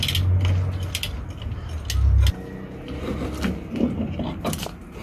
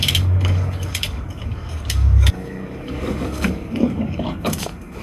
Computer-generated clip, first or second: second